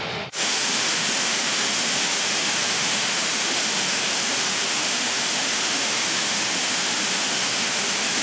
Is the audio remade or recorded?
remade